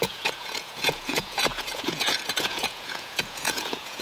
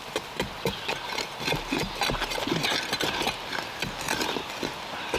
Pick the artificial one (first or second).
first